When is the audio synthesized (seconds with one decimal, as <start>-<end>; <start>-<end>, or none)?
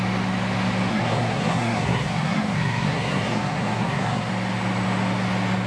0.9-4.3